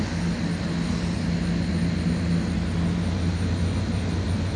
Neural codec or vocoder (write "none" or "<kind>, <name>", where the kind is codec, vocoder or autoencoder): none